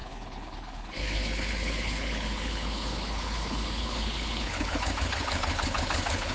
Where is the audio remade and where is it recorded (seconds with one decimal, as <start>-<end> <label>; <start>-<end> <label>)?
0.0-6.3 remade